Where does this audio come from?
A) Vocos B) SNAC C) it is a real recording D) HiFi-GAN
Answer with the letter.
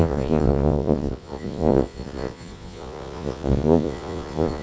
A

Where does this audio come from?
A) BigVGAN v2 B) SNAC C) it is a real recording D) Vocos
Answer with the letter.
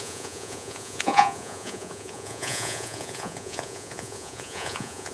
D